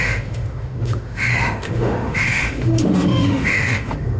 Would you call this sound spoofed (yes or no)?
yes